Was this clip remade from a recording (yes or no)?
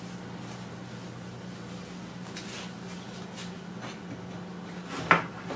no